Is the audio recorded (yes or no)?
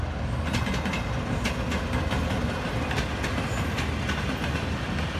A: yes